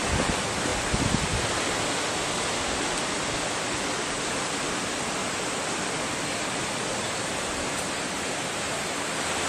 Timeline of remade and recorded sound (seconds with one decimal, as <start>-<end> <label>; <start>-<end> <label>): 0.0-6.9 recorded; 6.9-8.8 remade; 8.8-9.5 recorded